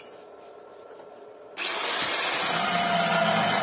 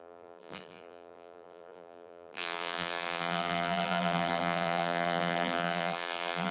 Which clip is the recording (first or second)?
first